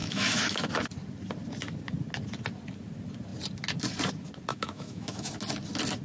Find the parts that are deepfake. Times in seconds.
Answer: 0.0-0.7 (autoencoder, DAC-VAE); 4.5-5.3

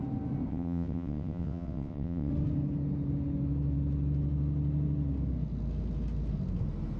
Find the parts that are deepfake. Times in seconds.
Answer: 0.5-2.3 (vocoder, WaveNeXt)

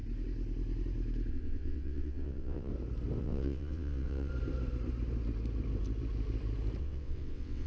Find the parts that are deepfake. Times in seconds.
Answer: 1.3-2.7 (vocoder, WaveNeXt); 3.2-4.3; 6.8-7.7

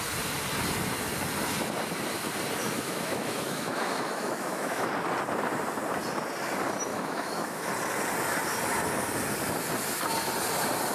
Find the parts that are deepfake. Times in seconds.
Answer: 2.6-4.9 (autoencoder, DAC-VAE); 6.9-7.7